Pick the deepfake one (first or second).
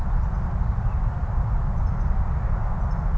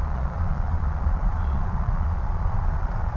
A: second